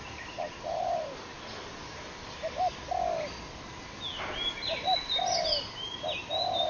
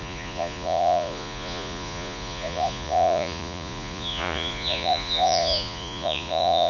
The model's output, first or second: second